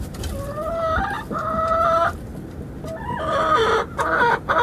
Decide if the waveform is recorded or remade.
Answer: recorded